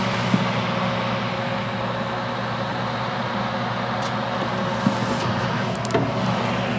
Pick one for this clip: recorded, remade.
recorded